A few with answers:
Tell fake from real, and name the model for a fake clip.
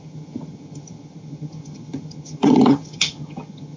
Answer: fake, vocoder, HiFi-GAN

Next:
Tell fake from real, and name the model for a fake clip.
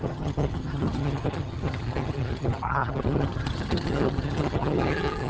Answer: fake, vocoder, HiFi-GAN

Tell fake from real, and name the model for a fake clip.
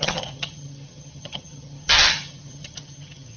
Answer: fake, vocoder, HiFi-GAN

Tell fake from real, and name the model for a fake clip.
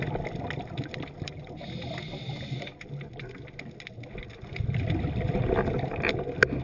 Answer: real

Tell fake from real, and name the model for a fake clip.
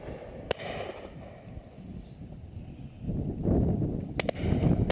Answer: real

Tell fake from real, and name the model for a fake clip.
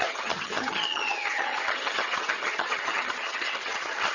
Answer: fake, vocoder, HiFi-GAN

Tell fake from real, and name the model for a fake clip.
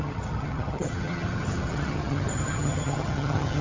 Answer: fake, vocoder, HiFi-GAN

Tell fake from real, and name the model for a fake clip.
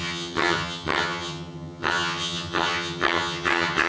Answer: fake, vocoder, HiFi-GAN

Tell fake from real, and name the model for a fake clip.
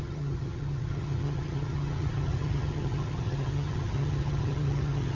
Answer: fake, vocoder, HiFi-GAN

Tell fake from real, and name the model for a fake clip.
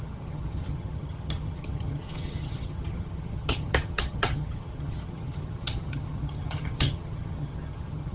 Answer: fake, vocoder, HiFi-GAN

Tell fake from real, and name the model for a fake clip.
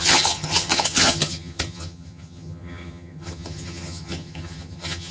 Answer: fake, vocoder, HiFi-GAN